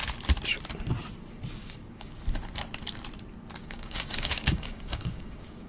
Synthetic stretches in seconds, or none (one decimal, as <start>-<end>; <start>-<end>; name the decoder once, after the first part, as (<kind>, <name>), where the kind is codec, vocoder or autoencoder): 1.6-2.2 (codec, DAC); 3.6-5.7